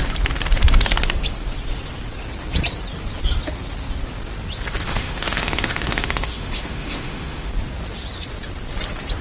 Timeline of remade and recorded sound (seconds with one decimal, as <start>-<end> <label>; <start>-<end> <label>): 0.0-4.9 recorded; 4.9-7.5 remade; 7.5-9.2 recorded